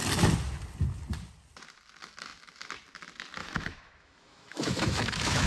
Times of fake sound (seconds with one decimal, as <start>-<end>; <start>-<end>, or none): 3.4-5.5

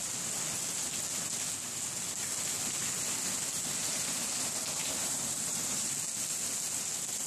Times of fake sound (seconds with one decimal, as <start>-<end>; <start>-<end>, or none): 3.8-4.3; 4.8-5.9

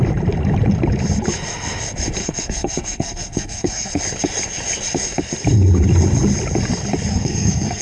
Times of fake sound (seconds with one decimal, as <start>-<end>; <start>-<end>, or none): 2.2-4.0; 7.1-7.8

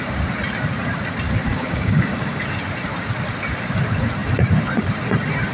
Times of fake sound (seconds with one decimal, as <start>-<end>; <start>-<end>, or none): 1.5-2.4

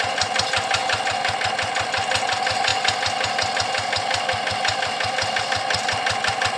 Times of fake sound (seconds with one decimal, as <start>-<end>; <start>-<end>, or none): none

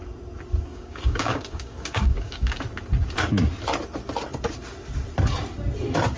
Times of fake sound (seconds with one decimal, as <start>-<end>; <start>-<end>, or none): 0.7-2.6

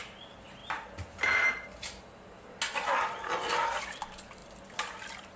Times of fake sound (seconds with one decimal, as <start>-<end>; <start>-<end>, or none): none